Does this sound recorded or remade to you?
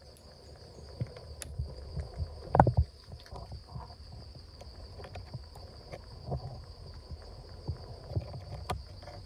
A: recorded